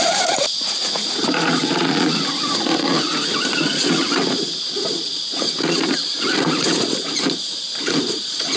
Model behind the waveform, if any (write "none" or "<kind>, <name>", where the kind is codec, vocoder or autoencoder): vocoder, Vocos